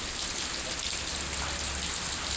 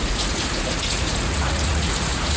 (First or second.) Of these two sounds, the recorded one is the first